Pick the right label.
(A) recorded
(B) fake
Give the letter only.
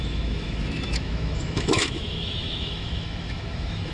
B